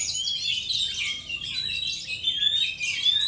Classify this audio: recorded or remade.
recorded